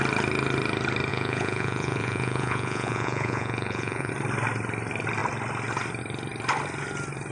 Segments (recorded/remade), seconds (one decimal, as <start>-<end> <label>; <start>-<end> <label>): 0.0-1.1 recorded; 1.1-4.1 remade; 4.1-7.3 recorded